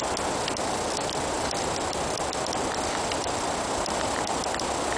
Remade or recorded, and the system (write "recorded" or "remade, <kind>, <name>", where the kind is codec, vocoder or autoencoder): recorded